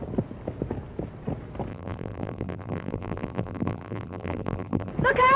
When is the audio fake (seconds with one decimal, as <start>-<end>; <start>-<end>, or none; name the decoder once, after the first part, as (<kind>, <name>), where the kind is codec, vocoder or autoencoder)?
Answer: 1.7-4.9 (vocoder, BigVGAN v2)